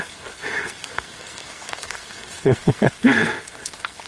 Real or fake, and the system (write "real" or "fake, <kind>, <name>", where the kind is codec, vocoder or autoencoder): fake, codec, SNAC